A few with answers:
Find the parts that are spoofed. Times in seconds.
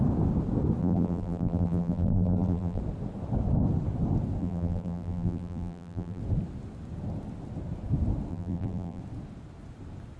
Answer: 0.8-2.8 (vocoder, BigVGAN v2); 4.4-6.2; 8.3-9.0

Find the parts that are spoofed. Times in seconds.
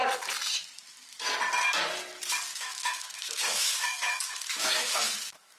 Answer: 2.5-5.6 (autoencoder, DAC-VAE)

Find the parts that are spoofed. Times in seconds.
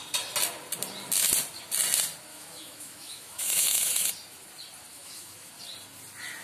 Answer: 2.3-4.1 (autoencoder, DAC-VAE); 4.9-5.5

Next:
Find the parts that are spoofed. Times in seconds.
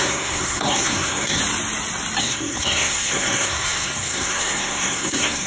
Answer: 0.0-1.4 (codec, SNAC); 2.2-5.5